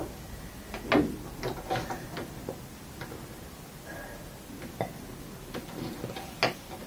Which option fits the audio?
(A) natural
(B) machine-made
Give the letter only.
A